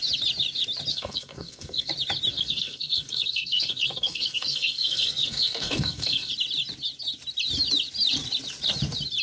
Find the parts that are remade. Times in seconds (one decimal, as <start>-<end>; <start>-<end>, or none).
0.9-1.9; 2.3-6.3